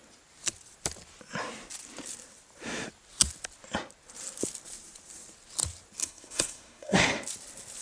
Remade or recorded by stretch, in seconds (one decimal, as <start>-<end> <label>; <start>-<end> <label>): 0.0-6.0 recorded; 6.0-7.0 remade; 7.0-7.8 recorded